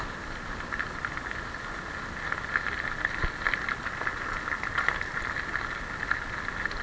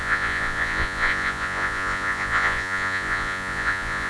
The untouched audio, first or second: first